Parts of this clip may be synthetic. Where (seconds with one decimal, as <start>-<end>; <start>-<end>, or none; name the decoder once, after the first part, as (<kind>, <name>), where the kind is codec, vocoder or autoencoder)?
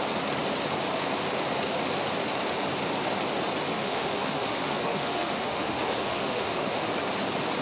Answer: 3.7-6.9 (autoencoder, DAC-VAE)